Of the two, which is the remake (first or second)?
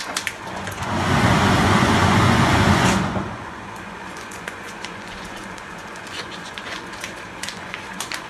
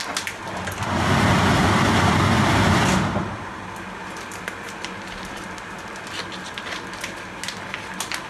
first